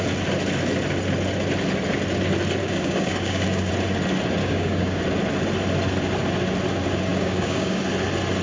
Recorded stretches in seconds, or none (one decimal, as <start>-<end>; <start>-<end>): 0.0-2.6; 3.7-4.4; 5.0-7.1; 7.8-8.4